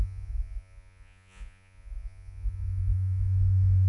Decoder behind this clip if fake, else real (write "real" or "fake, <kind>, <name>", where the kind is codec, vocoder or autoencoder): fake, vocoder, Vocos